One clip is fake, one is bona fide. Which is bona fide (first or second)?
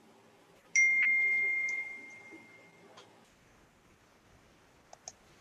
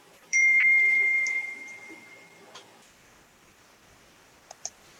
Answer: first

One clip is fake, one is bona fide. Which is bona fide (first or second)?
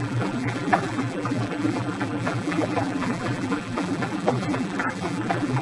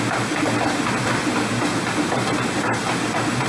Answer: second